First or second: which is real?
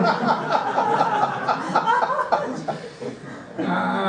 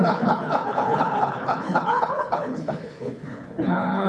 first